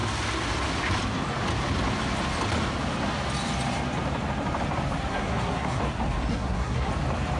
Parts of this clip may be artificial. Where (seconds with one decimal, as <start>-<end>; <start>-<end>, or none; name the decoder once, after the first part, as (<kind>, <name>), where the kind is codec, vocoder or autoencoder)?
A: 5.1-5.8 (codec, SNAC); 6.3-6.9